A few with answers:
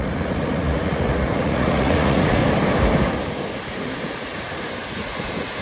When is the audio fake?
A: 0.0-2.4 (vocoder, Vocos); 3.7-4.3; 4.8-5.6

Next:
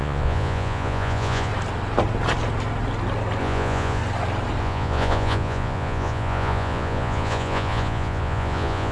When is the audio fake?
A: 0.0-1.5 (vocoder, Vocos); 3.4-4.0; 4.6-8.9

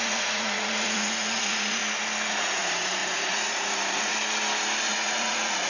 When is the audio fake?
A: 0.0-1.8 (vocoder, Vocos); 2.3-4.1; 4.9-5.7

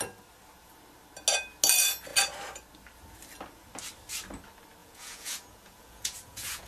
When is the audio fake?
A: 4.8-6.7 (vocoder, Vocos)

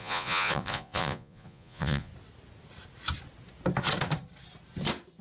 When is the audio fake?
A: 0.0-2.1 (vocoder, Vocos)

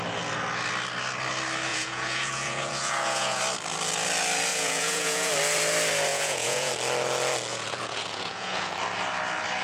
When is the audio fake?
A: 1.7-3.4 (vocoder, Vocos); 4.5-5.3; 6.1-6.7; 7.5-8.8

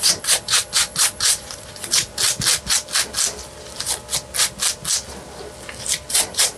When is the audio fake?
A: 0.0-2.1 (vocoder, Vocos); 6.1-6.6